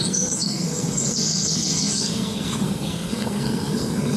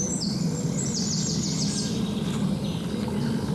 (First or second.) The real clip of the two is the second